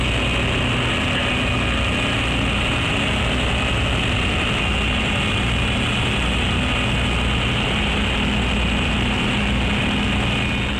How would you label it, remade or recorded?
recorded